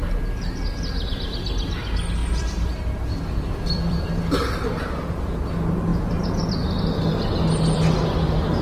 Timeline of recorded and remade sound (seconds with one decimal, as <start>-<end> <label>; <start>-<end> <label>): 0.0-2.2 recorded; 2.2-4.2 remade; 4.2-8.6 recorded